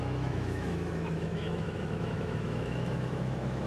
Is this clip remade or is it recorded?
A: remade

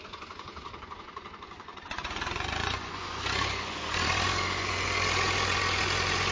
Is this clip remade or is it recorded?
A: remade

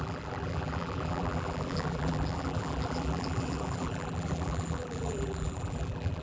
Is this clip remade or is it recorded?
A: remade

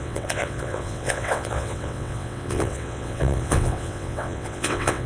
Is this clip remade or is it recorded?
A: remade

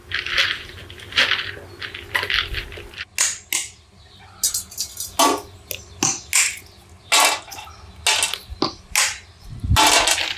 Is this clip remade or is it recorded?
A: recorded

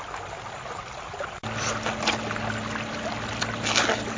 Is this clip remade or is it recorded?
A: recorded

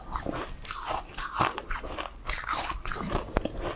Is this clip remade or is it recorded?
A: recorded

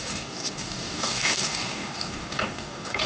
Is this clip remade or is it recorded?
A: remade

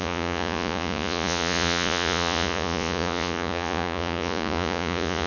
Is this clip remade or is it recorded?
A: remade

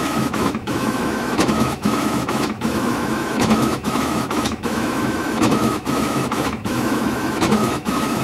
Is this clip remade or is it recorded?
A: remade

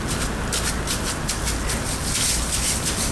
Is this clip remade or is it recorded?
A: recorded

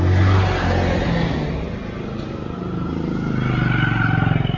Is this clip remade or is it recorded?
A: recorded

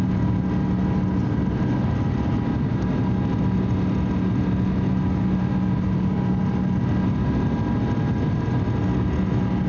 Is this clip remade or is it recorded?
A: recorded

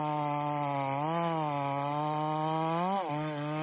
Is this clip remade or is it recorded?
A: recorded